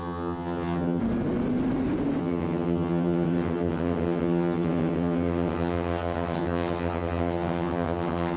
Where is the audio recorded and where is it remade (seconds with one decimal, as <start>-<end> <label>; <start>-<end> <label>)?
0.0-1.0 remade; 1.0-2.2 recorded; 2.2-8.4 remade